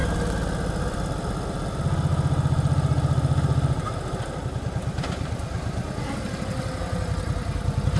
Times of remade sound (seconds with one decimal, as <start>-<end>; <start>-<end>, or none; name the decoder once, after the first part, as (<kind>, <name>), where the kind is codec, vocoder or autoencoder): none